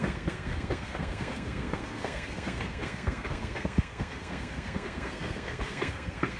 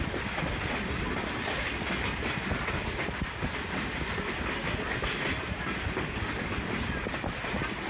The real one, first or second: second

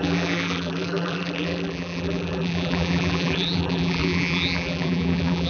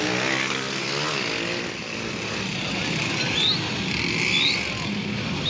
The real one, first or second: second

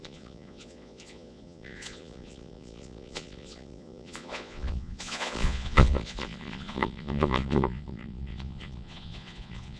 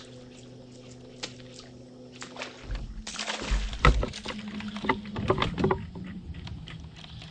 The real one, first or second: second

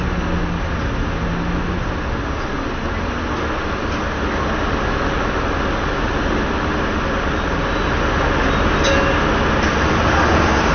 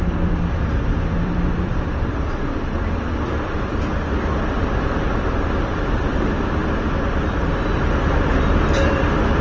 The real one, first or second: first